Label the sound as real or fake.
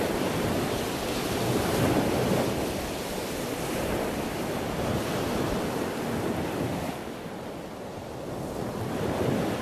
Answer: real